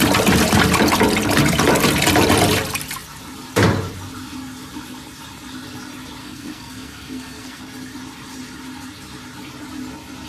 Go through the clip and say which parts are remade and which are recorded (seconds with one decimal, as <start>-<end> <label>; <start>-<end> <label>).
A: 0.0-6.2 recorded; 6.2-7.6 remade; 7.6-10.3 recorded